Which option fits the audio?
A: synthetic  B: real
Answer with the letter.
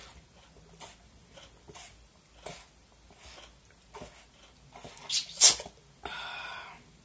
B